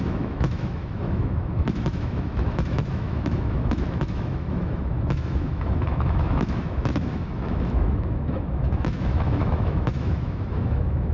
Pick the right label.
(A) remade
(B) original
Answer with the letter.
A